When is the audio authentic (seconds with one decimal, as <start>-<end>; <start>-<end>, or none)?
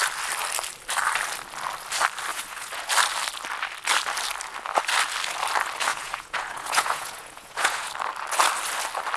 0.0-2.3; 2.9-5.9; 7.9-9.2